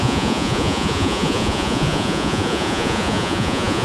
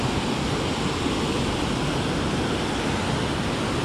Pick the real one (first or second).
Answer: second